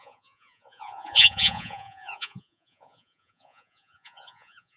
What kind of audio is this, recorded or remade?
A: remade